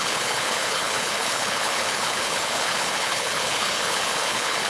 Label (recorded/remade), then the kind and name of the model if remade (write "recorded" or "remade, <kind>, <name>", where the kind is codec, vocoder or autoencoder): remade, codec, HILCodec